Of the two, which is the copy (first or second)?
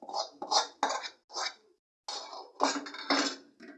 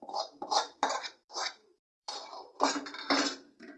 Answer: second